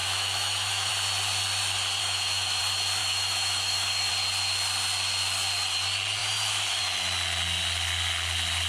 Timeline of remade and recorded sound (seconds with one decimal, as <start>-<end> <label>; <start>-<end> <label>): 0.0-0.9 remade; 0.9-2.0 recorded; 2.0-2.6 remade; 2.6-3.0 recorded; 3.0-4.1 remade; 4.1-8.7 recorded